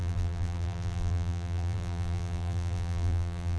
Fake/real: fake